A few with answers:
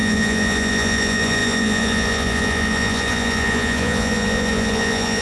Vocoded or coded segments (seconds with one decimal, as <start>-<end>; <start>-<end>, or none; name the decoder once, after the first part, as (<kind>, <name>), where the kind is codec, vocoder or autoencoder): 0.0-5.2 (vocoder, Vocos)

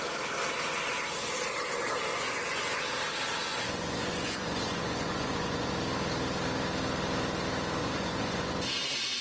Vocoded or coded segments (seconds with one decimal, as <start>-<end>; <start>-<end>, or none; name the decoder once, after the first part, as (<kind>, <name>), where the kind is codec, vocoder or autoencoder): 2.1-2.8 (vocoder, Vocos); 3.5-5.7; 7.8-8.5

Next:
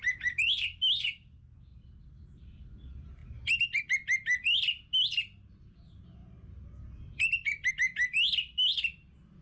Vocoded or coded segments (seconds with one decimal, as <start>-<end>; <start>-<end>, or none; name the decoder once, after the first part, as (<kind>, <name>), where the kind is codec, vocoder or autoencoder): none